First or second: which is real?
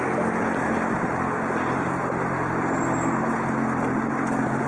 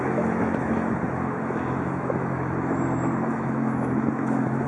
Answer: first